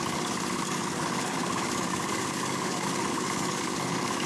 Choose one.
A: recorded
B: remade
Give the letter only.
B